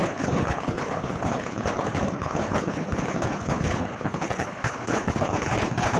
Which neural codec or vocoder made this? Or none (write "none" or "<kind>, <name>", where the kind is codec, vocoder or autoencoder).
codec, HILCodec